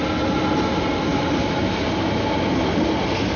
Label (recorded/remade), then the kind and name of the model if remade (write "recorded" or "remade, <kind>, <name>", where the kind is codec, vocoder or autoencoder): recorded